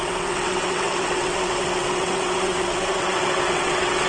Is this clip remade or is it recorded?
remade